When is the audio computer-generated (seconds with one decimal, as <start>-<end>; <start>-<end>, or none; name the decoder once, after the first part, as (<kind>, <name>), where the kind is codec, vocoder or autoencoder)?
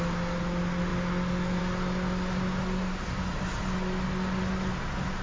none